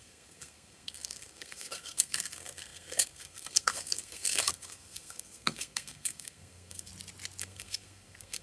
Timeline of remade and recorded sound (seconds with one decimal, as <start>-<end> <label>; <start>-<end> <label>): 0.0-6.9 remade; 6.9-7.4 recorded; 7.4-8.4 remade